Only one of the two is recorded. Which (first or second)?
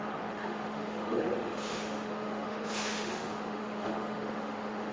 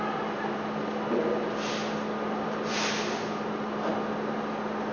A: second